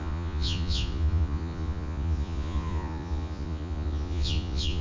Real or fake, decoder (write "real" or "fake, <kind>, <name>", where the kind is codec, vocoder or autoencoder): fake, vocoder, Vocos